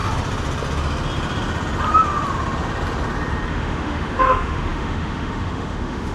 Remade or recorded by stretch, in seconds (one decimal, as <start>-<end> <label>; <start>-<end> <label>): 0.0-3.5 recorded; 3.5-6.1 remade